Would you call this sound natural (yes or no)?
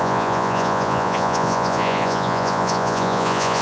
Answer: no